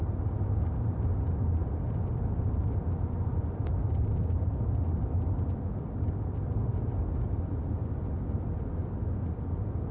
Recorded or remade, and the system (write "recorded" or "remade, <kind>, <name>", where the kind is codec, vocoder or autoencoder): recorded